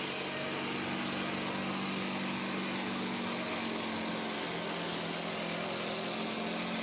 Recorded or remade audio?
recorded